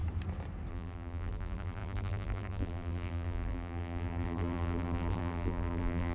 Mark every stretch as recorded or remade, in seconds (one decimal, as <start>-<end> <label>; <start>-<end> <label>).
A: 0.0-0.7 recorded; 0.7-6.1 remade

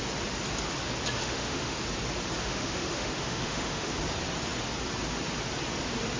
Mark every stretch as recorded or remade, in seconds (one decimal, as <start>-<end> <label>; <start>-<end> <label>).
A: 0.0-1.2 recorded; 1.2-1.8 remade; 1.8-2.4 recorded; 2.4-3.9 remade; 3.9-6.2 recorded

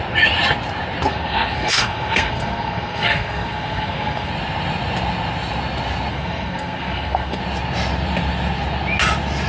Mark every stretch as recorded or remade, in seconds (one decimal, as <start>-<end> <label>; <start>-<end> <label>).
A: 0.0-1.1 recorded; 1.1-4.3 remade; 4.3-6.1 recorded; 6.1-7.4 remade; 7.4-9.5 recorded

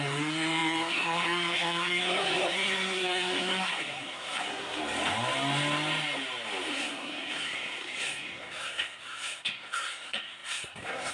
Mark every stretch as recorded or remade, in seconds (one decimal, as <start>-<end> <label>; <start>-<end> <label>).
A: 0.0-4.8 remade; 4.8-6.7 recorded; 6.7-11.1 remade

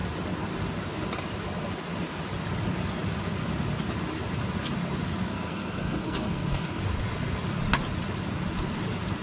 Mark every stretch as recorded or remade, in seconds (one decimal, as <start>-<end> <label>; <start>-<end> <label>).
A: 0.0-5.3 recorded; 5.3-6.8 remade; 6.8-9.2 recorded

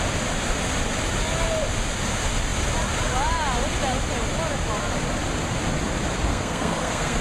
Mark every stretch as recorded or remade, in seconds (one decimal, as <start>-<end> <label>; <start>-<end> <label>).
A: 0.0-6.3 recorded; 6.3-7.2 remade